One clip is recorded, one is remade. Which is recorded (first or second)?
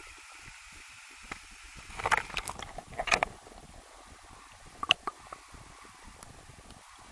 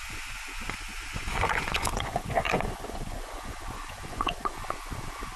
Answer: first